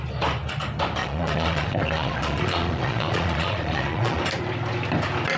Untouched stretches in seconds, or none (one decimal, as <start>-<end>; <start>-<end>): 0.0-1.0; 4.2-5.4

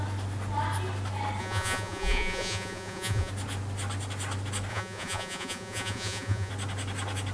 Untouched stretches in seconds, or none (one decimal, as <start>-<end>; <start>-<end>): 0.0-1.4; 3.3-4.7; 6.5-7.3

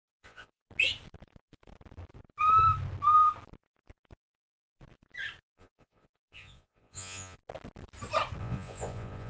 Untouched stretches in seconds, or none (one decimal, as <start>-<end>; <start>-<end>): 0.6-5.4; 7.4-8.4

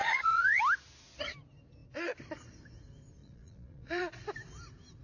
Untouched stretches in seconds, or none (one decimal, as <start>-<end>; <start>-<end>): 0.6-3.2; 4.0-5.0

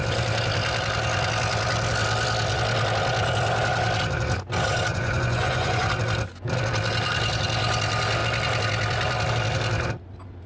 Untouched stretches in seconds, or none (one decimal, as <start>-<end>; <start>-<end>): 0.0-4.9; 5.9-10.5